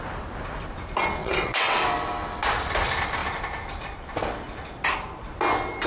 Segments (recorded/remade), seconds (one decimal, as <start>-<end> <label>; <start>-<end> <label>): 0.0-1.2 recorded; 1.2-1.8 remade; 1.8-5.9 recorded